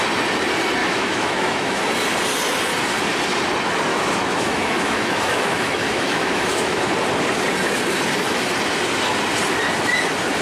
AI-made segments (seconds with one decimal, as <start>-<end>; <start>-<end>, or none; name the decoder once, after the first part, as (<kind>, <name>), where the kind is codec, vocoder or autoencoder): 0.8-1.8 (autoencoder, DAC-VAE); 3.9-6.8